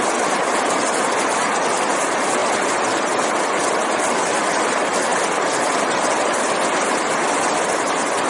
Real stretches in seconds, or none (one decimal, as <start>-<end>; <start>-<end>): 0.0-8.3